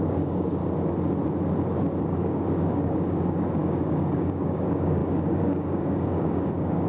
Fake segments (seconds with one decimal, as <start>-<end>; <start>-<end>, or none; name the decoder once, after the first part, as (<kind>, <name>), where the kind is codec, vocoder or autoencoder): 0.0-0.6 (codec, DAC); 2.0-6.9